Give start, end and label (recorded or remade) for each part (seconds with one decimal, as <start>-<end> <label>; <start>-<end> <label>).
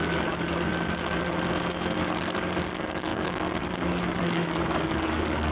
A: 0.0-0.7 remade; 0.7-2.0 recorded; 2.0-5.5 remade